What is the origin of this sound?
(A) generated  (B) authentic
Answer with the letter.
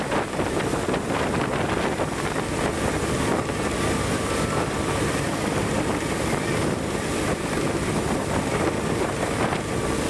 A